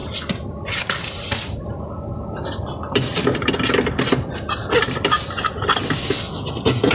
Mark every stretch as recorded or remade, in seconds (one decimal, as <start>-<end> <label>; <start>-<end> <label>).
0.0-6.9 remade